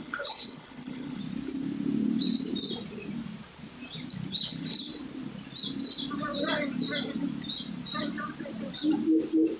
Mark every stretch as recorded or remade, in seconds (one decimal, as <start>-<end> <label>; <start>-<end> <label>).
0.0-1.2 remade; 1.2-4.3 recorded; 4.3-4.9 remade; 4.9-9.6 recorded